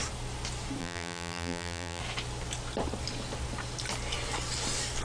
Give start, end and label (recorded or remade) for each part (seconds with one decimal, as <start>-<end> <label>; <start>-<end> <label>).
0.0-0.8 recorded; 0.8-2.0 remade; 2.0-5.0 recorded